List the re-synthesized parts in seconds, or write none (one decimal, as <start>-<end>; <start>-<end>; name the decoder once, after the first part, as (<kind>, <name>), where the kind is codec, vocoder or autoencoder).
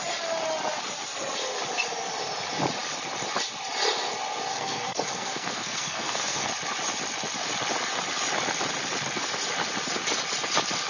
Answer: 4.5-6.5 (codec, SNAC)